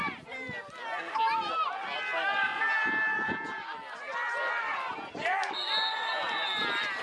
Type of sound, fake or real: real